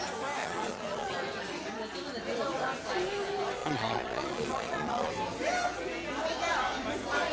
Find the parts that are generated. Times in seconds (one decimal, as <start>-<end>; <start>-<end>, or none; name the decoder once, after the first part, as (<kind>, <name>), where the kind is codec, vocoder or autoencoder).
0.4-1.1 (vocoder, Vocos); 3.6-5.1